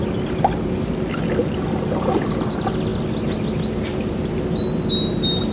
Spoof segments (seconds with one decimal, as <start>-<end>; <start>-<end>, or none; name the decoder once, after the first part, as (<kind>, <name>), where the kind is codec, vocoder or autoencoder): none